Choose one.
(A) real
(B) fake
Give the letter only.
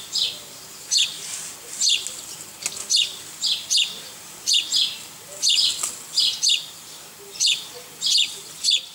A